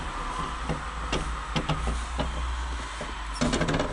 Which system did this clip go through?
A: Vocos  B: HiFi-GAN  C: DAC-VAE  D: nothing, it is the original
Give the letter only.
D